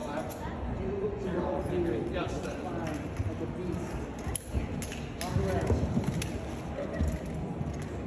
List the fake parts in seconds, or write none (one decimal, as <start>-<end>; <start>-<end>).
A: 0.0-1.6; 2.2-2.7